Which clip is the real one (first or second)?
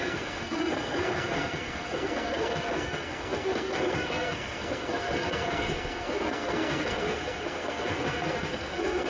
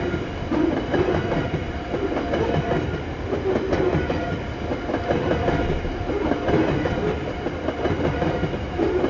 second